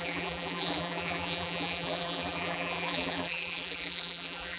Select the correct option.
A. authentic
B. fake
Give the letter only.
B